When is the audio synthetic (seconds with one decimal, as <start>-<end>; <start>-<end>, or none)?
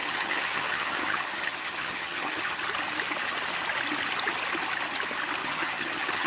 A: 0.0-2.6; 5.4-6.3